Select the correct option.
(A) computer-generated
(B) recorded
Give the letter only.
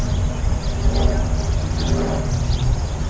B